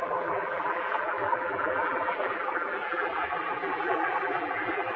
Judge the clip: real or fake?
fake